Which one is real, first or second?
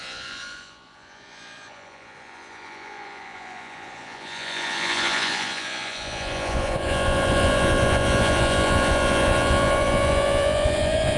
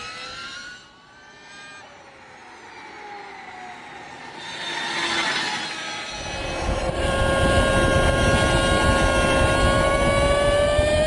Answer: second